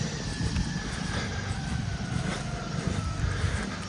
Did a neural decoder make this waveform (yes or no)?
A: no